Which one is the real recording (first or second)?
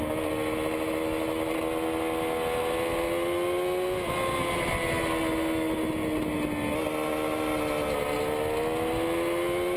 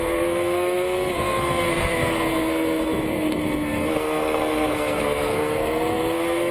first